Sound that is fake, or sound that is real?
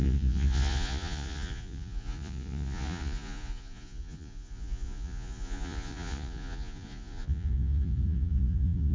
fake